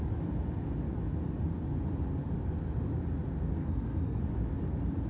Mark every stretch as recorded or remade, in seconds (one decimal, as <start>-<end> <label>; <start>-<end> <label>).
0.0-3.6 recorded; 3.6-4.2 remade; 4.2-5.1 recorded